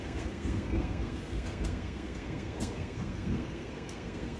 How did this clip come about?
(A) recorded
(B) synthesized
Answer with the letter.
B